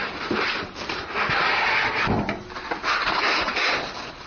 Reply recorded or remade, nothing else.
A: recorded